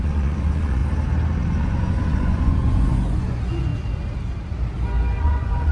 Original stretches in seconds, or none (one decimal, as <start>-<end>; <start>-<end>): 0.8-1.6; 3.7-5.2